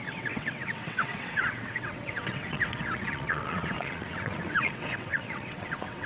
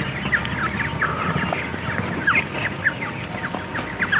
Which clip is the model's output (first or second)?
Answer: first